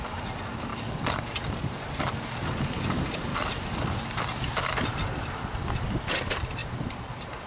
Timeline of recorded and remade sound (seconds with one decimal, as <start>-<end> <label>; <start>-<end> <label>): 0.0-0.7 remade; 0.7-1.5 recorded; 1.5-3.3 remade; 3.3-5.7 recorded; 5.7-7.5 remade